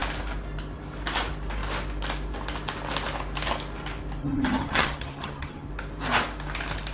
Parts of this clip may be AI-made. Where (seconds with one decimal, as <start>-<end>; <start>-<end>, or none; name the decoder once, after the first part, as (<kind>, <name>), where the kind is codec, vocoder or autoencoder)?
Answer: 4.2-5.7 (vocoder, HiFi-GAN)